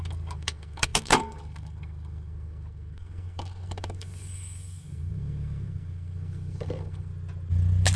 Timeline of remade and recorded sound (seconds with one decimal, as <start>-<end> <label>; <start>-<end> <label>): 0.0-7.1 remade; 7.1-8.0 recorded